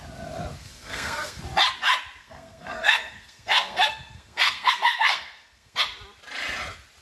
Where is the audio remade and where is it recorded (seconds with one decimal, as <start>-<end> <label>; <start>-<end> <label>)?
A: 0.0-0.6 recorded; 0.6-1.4 remade; 1.4-2.2 recorded; 2.2-5.8 remade; 5.8-7.0 recorded

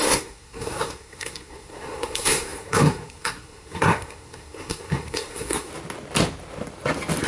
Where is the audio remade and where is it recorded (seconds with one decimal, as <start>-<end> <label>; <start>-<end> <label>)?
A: 0.0-5.7 remade; 5.7-7.3 recorded

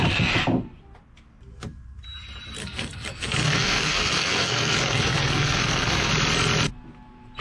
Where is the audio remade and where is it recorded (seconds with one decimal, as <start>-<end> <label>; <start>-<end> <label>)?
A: 0.0-2.6 recorded; 2.6-6.1 remade; 6.1-7.4 recorded

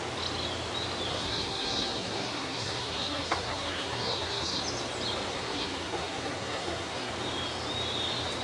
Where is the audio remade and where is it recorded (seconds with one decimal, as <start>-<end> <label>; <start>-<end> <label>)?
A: 0.0-1.1 recorded; 1.1-4.6 remade; 4.6-5.3 recorded; 5.3-7.1 remade; 7.1-8.4 recorded

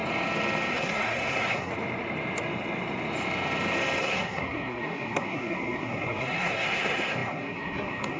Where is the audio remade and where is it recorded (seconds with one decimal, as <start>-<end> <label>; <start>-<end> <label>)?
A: 0.0-0.7 recorded; 0.7-1.7 remade; 1.7-4.0 recorded; 4.0-8.2 remade

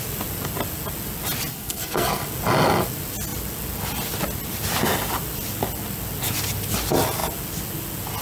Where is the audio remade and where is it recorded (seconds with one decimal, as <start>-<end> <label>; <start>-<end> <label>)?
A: 0.0-1.5 recorded; 1.5-2.2 remade; 2.2-8.2 recorded